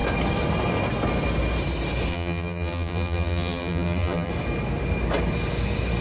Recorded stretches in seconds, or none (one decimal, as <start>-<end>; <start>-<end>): 0.0-2.1; 4.3-6.0